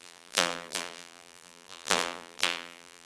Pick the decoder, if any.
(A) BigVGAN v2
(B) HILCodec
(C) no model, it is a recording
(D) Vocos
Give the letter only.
A